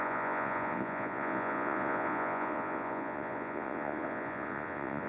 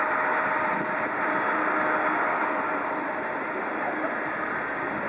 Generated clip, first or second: first